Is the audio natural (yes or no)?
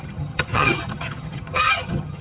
no